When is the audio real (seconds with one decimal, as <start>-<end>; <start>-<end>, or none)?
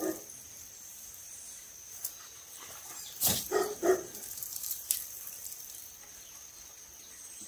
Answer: 0.0-0.9; 5.0-7.5